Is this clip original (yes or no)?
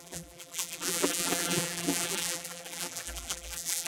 no